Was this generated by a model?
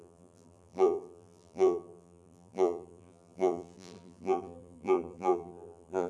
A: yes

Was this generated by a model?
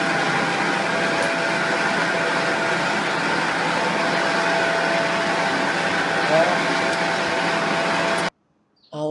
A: no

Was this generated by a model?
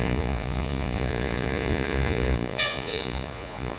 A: yes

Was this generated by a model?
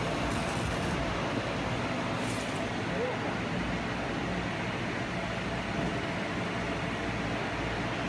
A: no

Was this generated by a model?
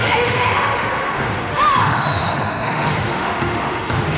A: yes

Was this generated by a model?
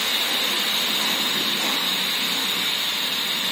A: no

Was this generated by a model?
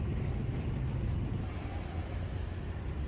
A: no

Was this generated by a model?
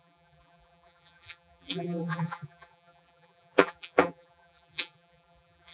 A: yes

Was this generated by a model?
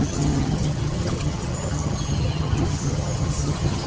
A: yes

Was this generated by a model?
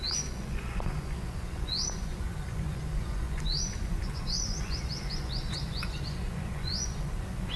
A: yes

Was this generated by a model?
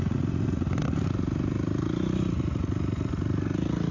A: no